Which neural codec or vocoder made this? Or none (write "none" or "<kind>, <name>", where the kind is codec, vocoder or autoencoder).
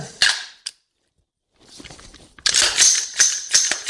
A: none